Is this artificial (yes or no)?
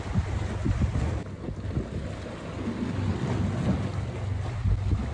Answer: no